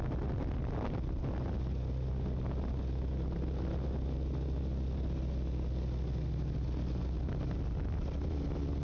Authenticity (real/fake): real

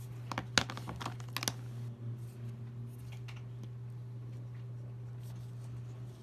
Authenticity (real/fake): real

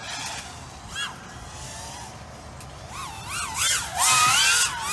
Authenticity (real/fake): real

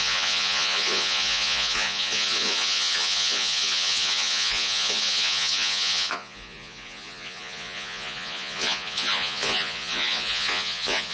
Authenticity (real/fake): fake